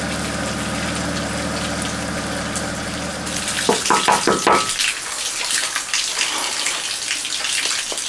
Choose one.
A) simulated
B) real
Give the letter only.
B